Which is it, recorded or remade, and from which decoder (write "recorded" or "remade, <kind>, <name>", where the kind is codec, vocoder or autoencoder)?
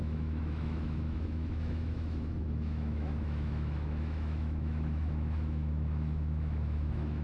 remade, autoencoder, DAC-VAE